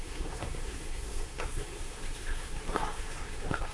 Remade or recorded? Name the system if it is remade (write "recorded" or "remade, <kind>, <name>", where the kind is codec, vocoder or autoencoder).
remade, codec, SNAC